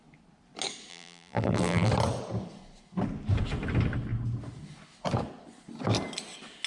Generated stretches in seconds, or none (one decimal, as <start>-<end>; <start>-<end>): 0.9-1.9